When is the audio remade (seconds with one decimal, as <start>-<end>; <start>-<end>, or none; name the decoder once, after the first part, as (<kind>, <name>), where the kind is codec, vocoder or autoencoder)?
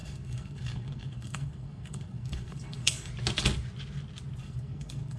0.0-3.1 (codec, SNAC); 4.4-5.2